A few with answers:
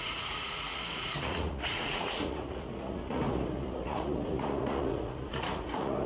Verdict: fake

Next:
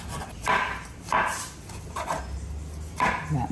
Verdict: real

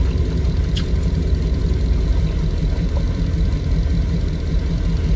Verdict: fake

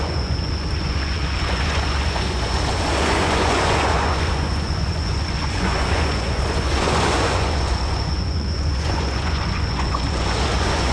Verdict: fake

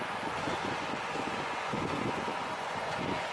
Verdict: fake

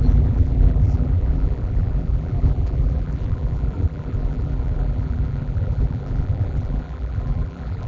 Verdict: fake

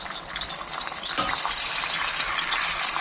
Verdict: real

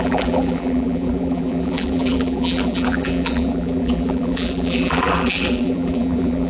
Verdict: fake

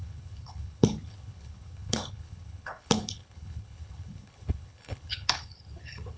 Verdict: fake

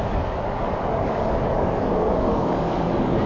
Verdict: fake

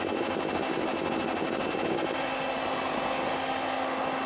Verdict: real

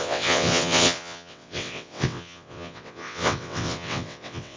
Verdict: fake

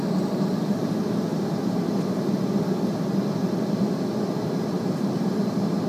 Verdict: real